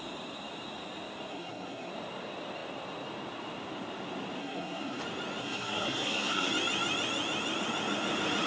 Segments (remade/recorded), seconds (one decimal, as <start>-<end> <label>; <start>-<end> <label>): 0.0-1.3 recorded; 1.3-1.9 remade; 1.9-4.4 recorded; 4.4-5.0 remade; 5.0-5.4 recorded; 5.4-6.5 remade; 6.5-8.5 recorded